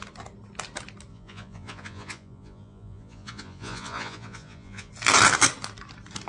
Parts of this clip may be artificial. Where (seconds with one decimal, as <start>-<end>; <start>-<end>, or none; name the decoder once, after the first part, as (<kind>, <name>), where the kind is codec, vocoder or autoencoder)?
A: 1.1-4.9 (vocoder, Vocos)